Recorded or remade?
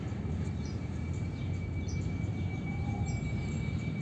remade